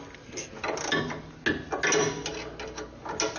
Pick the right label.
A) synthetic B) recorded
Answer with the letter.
B